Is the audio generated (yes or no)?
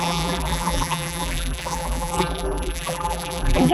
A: yes